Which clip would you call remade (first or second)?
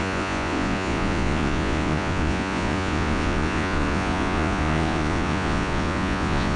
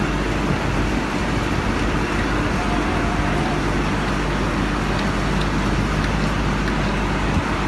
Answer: first